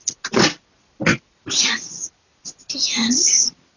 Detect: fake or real real